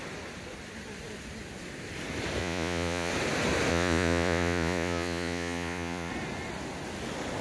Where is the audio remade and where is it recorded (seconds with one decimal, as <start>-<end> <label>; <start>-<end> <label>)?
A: 0.0-2.4 recorded; 2.4-3.1 remade; 3.1-3.7 recorded; 3.7-6.1 remade; 6.1-7.4 recorded

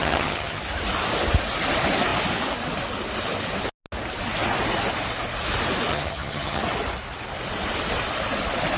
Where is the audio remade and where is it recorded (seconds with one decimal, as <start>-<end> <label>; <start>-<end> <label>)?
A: 0.0-0.6 remade; 0.6-5.9 recorded; 5.9-6.6 remade; 6.6-8.8 recorded

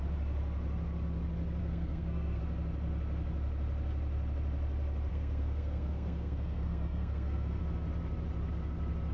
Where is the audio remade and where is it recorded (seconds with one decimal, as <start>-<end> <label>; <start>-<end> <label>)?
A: 0.0-1.6 recorded; 1.6-2.4 remade; 2.4-5.1 recorded; 5.1-7.6 remade; 7.6-9.1 recorded

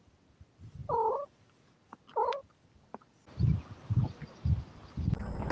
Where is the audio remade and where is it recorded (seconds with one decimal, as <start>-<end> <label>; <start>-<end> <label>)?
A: 0.0-5.5 recorded

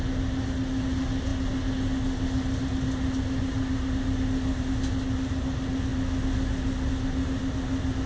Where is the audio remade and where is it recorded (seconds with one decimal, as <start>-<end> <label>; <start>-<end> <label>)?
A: 0.0-8.1 recorded

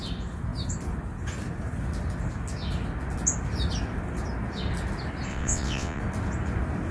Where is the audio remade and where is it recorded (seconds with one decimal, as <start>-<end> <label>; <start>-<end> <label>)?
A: 0.0-5.3 recorded; 5.3-6.0 remade; 6.0-6.9 recorded

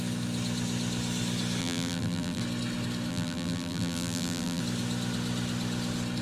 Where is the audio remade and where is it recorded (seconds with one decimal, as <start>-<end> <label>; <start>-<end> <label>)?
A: 0.0-1.6 recorded; 1.6-2.4 remade; 2.4-3.1 recorded; 3.1-4.6 remade; 4.6-6.2 recorded

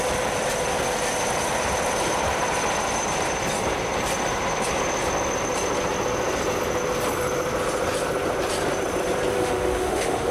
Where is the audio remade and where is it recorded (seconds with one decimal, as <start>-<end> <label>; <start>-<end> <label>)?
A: 0.0-9.3 recorded; 9.3-10.3 remade